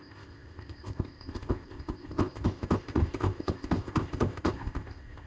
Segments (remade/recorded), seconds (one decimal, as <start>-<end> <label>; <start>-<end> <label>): 0.0-5.3 remade